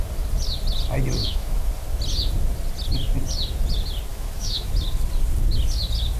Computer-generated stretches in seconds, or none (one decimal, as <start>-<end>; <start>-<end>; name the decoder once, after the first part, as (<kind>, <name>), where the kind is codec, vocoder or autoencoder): 1.2-1.7 (autoencoder, DAC-VAE); 4.1-4.7